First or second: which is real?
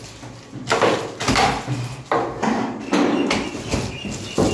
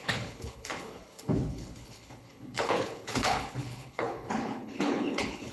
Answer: first